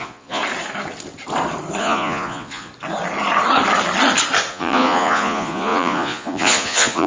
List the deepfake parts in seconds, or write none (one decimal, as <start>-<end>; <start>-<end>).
0.0-0.4; 1.8-2.7; 4.5-7.1